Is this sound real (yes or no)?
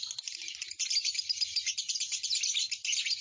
yes